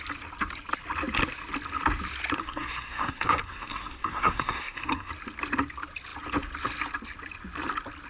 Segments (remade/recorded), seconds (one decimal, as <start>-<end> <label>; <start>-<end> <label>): 0.0-2.4 recorded; 2.4-5.1 remade; 5.1-8.1 recorded